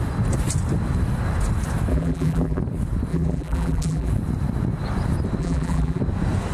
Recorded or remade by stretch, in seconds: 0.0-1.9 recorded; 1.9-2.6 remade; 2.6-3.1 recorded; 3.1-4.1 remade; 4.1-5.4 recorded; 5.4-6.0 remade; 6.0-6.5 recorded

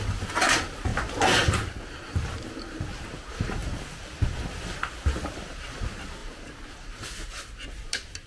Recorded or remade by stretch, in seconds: 0.0-3.6 recorded; 3.6-4.2 remade; 4.2-6.2 recorded; 6.2-7.5 remade; 7.5-8.3 recorded

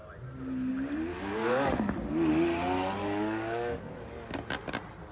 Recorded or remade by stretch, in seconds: 0.0-1.1 recorded; 1.1-1.7 remade; 1.7-3.0 recorded; 3.0-4.0 remade; 4.0-5.1 recorded

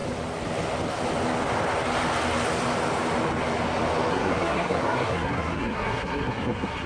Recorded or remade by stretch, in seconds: 0.0-4.1 recorded; 4.1-6.9 remade